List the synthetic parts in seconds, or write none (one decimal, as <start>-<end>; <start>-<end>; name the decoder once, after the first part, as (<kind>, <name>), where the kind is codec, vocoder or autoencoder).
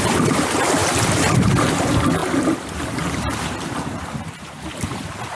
none